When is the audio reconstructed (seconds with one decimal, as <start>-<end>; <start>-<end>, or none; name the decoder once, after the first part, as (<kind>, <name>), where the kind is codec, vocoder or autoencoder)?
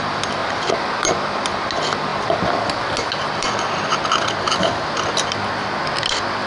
0.4-1.1 (vocoder, BigVGAN v2)